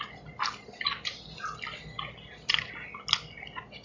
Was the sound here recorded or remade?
recorded